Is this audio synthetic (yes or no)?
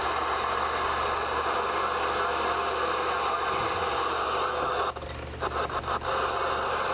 no